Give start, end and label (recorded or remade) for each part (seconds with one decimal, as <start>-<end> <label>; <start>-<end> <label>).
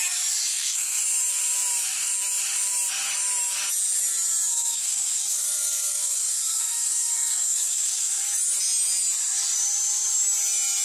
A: 0.0-0.5 recorded; 0.5-1.0 remade; 1.0-4.5 recorded; 4.5-8.2 remade; 8.2-10.8 recorded